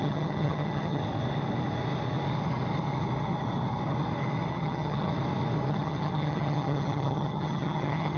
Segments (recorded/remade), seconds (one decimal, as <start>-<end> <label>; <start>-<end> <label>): 0.0-1.0 remade; 1.0-4.5 recorded; 4.5-5.1 remade; 5.1-5.7 recorded; 5.7-8.2 remade